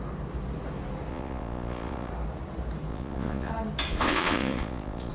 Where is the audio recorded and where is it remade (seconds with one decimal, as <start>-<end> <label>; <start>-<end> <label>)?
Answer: 0.0-1.1 recorded; 1.1-2.1 remade; 2.1-2.9 recorded; 2.9-3.5 remade; 3.5-3.9 recorded; 3.9-5.1 remade